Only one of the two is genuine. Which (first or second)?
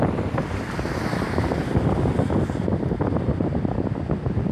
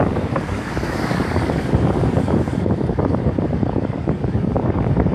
first